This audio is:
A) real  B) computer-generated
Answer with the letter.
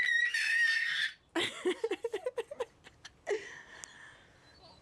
A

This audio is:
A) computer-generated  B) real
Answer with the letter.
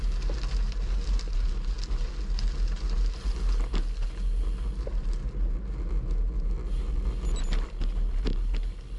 B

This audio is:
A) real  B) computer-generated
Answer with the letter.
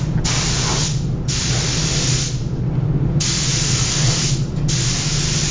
A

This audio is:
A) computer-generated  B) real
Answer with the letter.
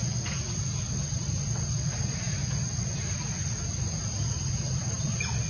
B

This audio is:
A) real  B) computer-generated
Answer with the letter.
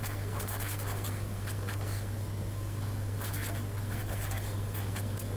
B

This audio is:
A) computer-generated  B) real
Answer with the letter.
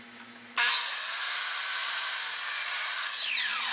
B